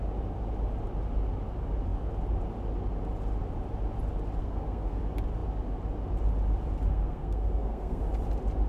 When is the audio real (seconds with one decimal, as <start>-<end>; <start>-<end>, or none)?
0.0-4.4; 5.0-6.9; 8.0-8.7